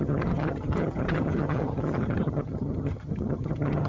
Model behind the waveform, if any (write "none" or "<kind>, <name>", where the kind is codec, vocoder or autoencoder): vocoder, HiFi-GAN